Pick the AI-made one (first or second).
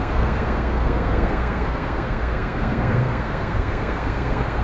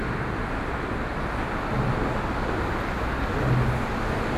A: first